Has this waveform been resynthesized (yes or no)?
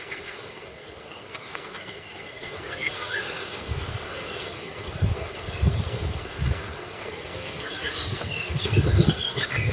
yes